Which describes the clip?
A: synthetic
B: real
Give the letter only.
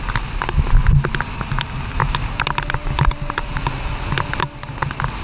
B